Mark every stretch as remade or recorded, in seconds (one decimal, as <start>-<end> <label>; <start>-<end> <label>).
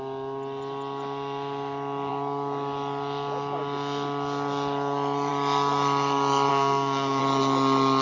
0.0-6.5 recorded; 6.5-7.2 remade; 7.2-8.0 recorded